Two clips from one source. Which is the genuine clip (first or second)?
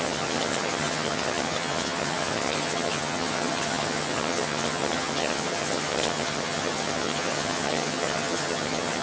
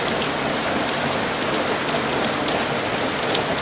second